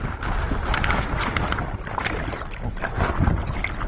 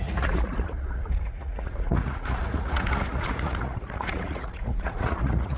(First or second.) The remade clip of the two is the second